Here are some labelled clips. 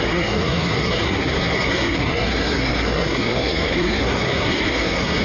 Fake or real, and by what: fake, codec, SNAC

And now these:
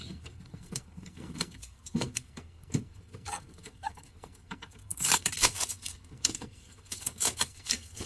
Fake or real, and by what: fake, codec, SNAC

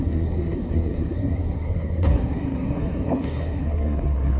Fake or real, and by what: fake, codec, SNAC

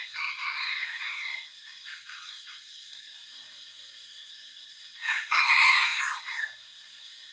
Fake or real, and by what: fake, codec, SNAC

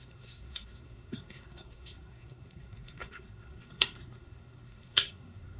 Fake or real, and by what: fake, codec, SNAC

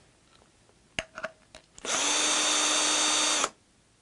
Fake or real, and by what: real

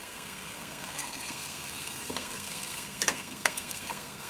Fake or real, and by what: fake, codec, SNAC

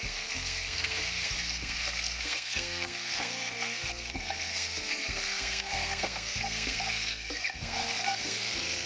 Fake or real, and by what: fake, codec, SNAC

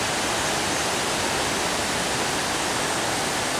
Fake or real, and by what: real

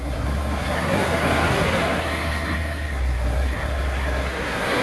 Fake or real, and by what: fake, codec, SNAC